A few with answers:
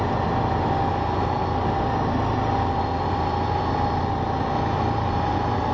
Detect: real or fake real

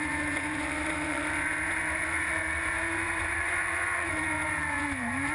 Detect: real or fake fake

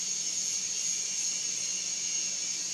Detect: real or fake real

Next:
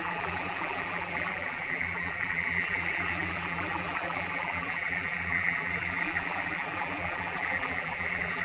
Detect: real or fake fake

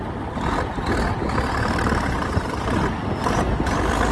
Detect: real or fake real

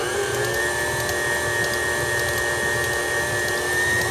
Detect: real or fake real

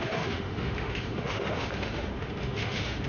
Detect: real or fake fake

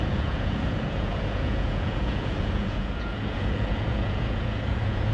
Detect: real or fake fake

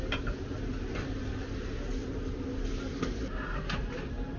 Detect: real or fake real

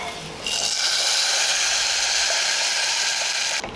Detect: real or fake real